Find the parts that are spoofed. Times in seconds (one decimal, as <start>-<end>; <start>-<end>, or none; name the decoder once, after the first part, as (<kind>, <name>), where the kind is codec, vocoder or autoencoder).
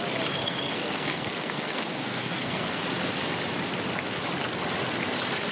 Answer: 0.4-2.8 (codec, SNAC)